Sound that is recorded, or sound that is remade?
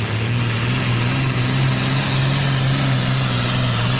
recorded